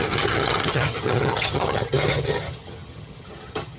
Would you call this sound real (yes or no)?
no